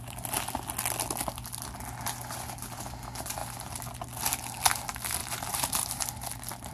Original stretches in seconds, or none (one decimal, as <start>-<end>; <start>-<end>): 0.0-5.2; 6.0-6.7